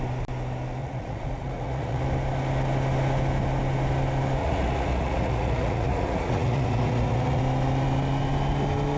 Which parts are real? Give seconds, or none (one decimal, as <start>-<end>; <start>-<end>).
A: 0.0-0.8; 2.0-4.4; 7.4-9.0